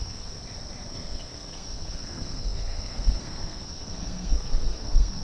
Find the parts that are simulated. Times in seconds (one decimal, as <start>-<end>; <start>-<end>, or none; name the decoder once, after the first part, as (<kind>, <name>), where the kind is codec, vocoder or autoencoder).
0.0-0.4 (codec, SNAC); 0.9-5.2